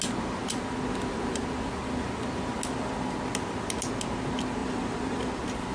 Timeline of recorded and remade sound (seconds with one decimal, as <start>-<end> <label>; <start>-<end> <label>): 0.0-4.6 recorded; 4.6-5.3 remade; 5.3-5.7 recorded